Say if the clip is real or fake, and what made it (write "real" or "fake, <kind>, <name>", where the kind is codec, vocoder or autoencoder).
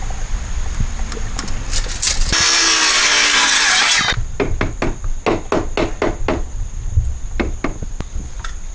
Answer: real